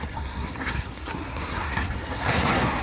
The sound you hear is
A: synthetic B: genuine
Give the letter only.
A